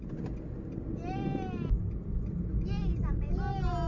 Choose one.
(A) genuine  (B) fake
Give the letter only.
A